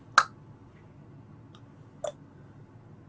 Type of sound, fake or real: real